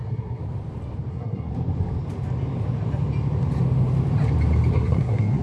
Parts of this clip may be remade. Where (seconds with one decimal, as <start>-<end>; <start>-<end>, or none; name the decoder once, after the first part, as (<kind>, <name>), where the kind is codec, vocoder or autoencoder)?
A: 0.0-0.4 (codec, SNAC); 1.1-1.5; 4.7-5.4